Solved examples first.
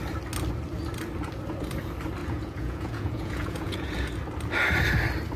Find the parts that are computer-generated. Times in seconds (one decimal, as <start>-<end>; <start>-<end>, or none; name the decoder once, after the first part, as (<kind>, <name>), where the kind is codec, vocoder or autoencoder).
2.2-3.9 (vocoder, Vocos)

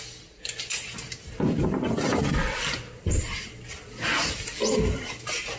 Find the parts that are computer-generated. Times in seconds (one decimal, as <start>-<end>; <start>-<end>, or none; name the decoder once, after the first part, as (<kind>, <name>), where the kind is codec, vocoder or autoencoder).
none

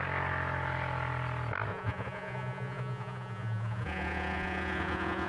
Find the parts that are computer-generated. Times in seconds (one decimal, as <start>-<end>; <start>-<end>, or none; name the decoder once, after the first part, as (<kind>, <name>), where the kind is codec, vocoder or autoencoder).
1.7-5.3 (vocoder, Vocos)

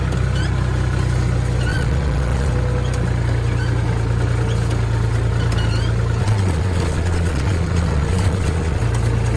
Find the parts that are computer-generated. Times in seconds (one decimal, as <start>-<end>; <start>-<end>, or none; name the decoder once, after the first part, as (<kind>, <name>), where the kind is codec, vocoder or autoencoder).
1.7-2.5 (vocoder, Vocos); 6.2-8.8

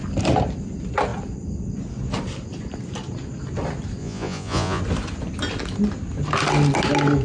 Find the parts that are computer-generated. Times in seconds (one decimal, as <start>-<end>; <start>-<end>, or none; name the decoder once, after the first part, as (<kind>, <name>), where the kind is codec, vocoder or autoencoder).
4.0-4.8 (vocoder, Vocos)